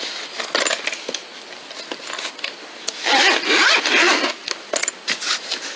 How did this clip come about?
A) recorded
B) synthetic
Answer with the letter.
A